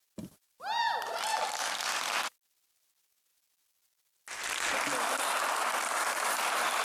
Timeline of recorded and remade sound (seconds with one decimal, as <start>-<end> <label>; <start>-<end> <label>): 0.0-5.7 recorded; 5.7-6.8 remade